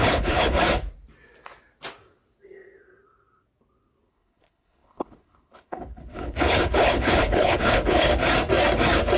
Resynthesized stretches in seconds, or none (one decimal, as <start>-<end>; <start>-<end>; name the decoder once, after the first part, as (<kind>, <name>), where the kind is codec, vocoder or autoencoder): 0.0-0.6 (codec, HILCodec); 4.1-8.1